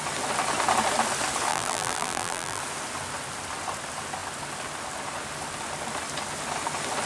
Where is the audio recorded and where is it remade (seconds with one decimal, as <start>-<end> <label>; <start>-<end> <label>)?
0.0-1.5 recorded; 1.5-2.6 remade; 2.6-7.1 recorded